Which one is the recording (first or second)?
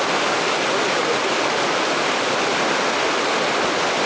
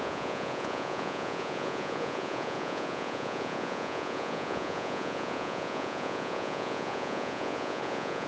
first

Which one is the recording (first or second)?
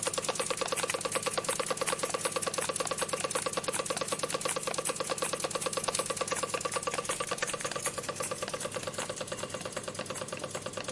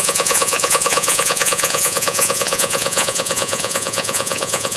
first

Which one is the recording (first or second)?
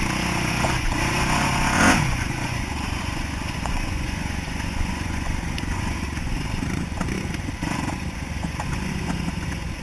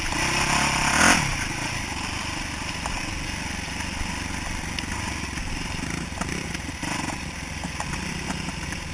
second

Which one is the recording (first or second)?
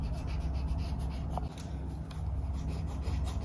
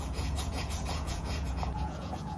first